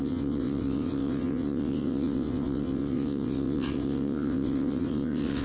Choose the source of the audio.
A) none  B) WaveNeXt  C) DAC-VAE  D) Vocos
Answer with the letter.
B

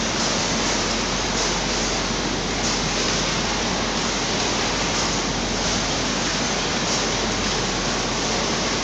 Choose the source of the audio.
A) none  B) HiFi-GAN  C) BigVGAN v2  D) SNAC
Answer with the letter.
A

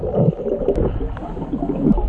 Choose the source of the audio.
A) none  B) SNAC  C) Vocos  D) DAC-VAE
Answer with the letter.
A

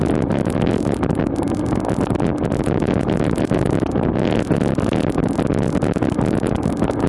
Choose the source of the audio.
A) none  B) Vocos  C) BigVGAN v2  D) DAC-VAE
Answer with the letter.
A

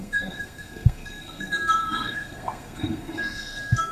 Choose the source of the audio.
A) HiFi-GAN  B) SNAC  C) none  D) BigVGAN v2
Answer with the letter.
B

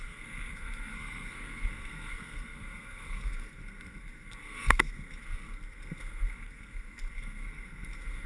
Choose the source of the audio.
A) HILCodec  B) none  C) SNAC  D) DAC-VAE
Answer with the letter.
C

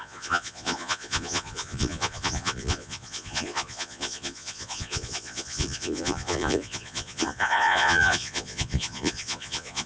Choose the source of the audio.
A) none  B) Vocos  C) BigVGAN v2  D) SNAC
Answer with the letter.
B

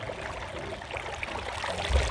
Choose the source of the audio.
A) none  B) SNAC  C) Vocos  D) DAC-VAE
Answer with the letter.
A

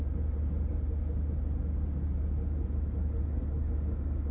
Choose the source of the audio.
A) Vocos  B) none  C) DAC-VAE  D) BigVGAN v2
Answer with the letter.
B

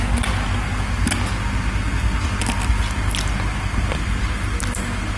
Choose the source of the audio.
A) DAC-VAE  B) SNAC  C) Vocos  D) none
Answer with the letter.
D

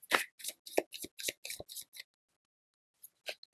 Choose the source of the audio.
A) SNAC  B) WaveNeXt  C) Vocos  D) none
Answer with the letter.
D